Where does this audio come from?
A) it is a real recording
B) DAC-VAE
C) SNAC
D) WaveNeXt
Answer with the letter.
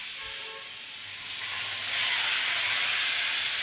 A